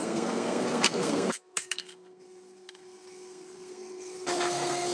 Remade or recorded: remade